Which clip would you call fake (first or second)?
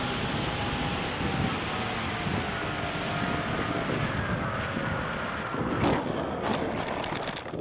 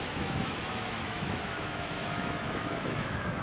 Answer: second